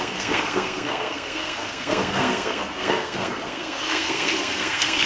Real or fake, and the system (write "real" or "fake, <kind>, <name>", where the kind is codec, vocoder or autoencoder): fake, codec, SNAC